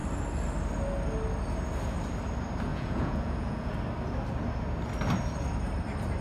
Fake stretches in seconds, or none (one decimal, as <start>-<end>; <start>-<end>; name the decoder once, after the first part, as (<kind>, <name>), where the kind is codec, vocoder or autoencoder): 2.7-3.7 (vocoder, Vocos)